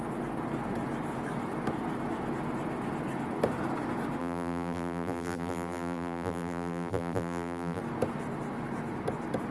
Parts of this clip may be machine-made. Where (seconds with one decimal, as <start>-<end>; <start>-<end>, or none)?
4.2-7.8